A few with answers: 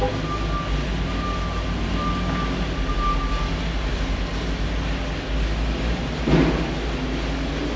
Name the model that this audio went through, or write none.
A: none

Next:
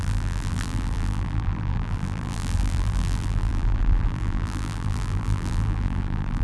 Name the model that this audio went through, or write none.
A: vocoder, BigVGAN v2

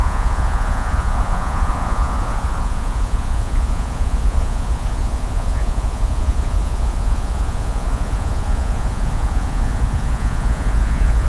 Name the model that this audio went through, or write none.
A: vocoder, Vocos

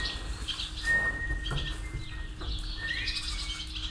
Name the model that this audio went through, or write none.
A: none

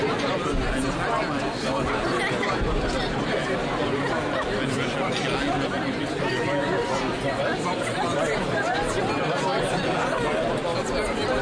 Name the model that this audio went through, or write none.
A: none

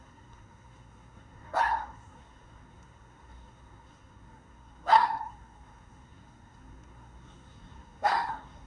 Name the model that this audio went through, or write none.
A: codec, SNAC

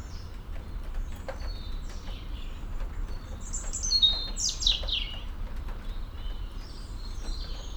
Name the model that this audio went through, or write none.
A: vocoder, BigVGAN v2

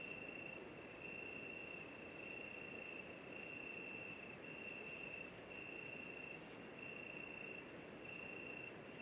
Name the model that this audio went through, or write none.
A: none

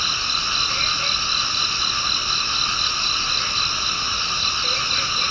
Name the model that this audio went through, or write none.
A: none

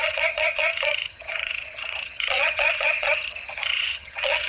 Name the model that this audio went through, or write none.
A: vocoder, HiFi-GAN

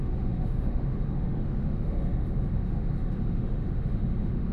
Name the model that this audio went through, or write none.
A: autoencoder, DAC-VAE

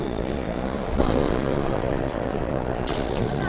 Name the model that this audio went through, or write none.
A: vocoder, Vocos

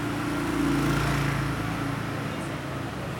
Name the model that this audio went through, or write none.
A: none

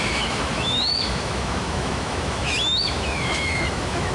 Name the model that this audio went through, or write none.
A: autoencoder, DAC-VAE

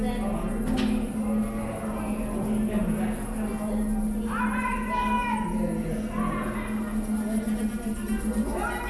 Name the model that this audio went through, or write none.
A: none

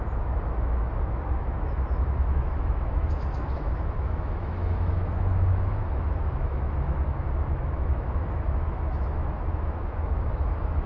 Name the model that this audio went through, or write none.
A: autoencoder, DAC-VAE